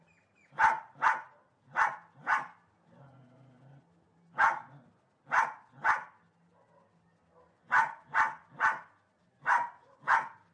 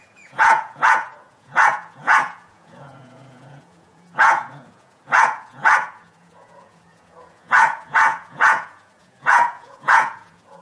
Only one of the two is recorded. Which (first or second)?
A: first